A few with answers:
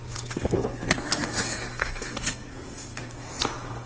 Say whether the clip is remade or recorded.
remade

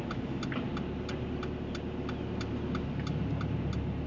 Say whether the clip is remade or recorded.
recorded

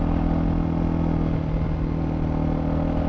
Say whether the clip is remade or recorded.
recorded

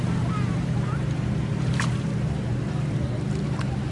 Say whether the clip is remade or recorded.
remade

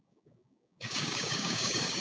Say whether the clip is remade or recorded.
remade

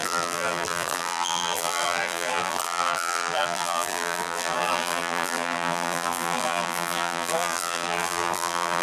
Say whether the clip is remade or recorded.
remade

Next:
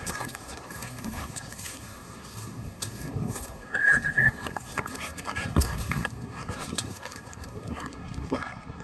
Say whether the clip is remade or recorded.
remade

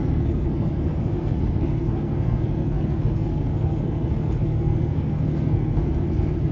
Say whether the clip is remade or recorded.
remade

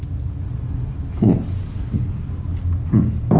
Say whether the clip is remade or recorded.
recorded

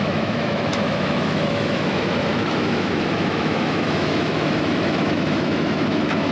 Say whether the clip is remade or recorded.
remade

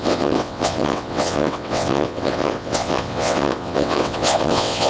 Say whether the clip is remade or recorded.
remade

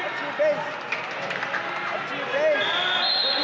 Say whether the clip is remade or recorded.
recorded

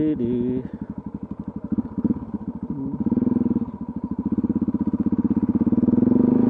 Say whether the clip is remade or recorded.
recorded